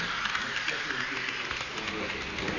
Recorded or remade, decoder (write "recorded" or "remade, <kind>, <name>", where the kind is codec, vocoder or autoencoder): recorded